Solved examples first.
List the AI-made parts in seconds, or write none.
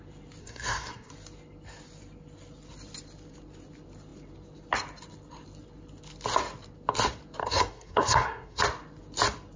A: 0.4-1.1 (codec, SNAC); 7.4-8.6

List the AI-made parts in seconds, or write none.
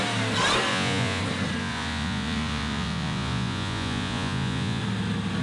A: 0.7-1.2 (vocoder, Vocos); 1.6-4.8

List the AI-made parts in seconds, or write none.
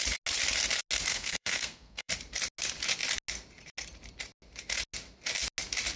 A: 1.1-2.1 (codec, SNAC)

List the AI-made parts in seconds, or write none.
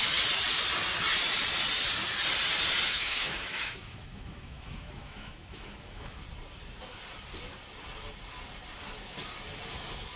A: 2.9-6.2 (autoencoder, DAC-VAE)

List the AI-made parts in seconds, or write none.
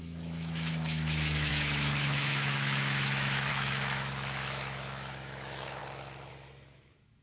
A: 0.0-5.8 (autoencoder, DAC-VAE); 6.3-7.2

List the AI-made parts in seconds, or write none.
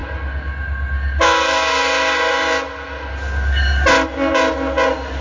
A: none